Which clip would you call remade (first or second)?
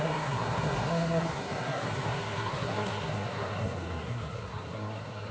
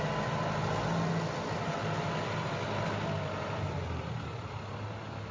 first